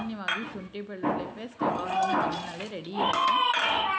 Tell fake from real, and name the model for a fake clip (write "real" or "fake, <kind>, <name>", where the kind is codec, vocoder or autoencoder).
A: real